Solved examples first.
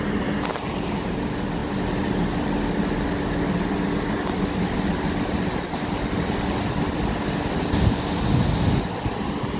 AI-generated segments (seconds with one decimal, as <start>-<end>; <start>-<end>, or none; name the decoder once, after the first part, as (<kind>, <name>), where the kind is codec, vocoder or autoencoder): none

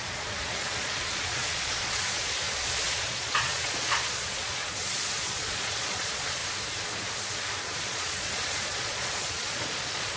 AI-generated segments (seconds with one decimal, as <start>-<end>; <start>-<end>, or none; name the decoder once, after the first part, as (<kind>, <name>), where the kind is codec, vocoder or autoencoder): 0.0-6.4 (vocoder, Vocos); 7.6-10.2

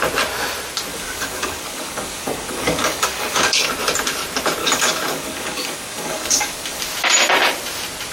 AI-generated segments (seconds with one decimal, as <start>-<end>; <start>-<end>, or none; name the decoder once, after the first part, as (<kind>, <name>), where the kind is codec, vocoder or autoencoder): 0.9-3.7 (codec, DAC); 4.6-6.8

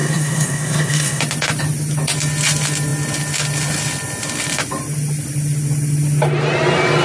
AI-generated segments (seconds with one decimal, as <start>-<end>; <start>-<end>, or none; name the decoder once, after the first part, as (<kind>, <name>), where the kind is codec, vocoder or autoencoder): 0.0-1.2 (codec, SNAC)